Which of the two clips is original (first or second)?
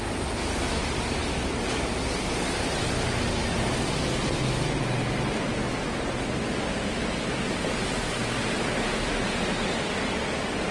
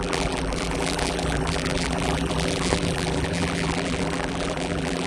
first